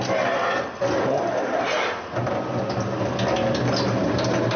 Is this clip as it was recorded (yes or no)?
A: yes